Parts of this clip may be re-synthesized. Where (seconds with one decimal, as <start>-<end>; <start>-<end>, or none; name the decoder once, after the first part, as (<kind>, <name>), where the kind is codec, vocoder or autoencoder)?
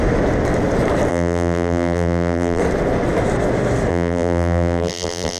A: 1.1-2.6 (vocoder, BigVGAN v2); 3.9-5.4